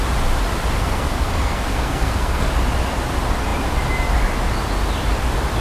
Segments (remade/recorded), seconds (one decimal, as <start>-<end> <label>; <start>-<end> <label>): 0.0-0.8 recorded; 0.8-2.5 remade; 2.5-5.6 recorded